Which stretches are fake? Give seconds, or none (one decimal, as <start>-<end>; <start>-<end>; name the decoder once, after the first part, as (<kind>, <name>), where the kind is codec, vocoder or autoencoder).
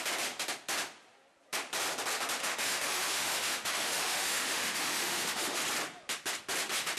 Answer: 2.4-5.6 (autoencoder, DAC-VAE)